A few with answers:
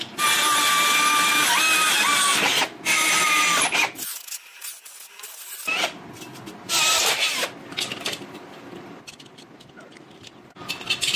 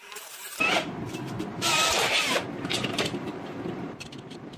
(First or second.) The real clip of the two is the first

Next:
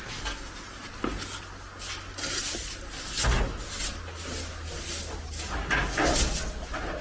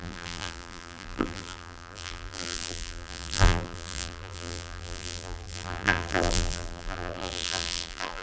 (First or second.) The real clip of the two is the first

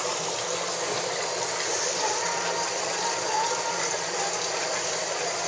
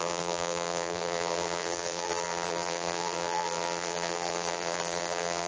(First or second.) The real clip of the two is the first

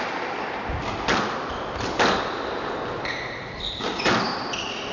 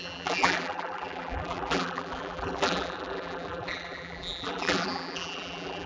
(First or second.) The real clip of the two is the first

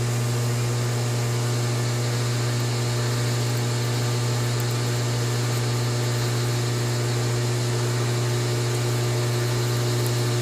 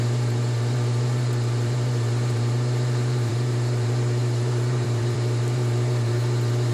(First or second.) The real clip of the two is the first